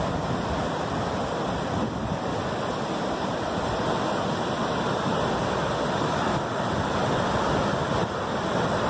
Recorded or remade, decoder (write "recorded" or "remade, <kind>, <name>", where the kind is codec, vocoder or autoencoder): recorded